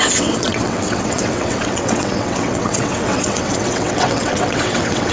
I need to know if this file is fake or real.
fake